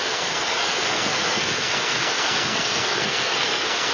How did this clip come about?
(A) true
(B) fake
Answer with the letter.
B